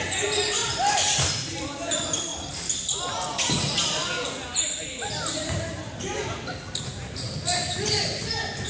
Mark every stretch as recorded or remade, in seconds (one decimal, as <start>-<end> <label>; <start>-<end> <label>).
0.0-0.6 recorded; 0.6-1.3 remade; 1.3-8.7 recorded